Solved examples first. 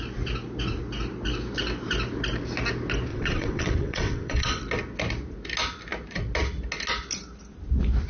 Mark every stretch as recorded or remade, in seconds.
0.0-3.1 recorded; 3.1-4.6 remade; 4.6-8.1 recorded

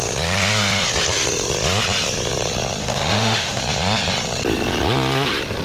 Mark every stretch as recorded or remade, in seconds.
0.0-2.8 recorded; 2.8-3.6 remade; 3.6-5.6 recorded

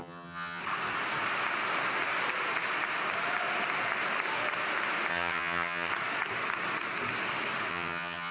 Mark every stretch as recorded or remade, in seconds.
0.0-0.6 remade; 0.6-5.1 recorded; 5.1-5.9 remade; 5.9-7.7 recorded; 7.7-8.3 remade

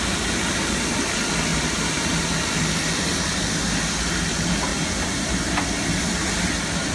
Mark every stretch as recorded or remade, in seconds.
0.0-1.5 recorded; 1.5-2.6 remade; 2.6-4.7 recorded; 4.7-5.4 remade; 5.4-6.9 recorded